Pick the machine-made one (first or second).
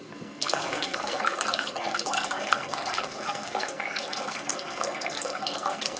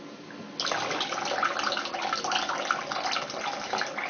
first